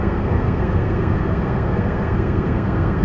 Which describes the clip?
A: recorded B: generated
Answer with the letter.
B